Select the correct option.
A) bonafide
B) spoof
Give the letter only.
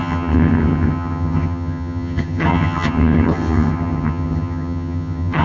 B